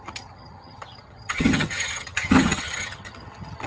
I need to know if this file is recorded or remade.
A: remade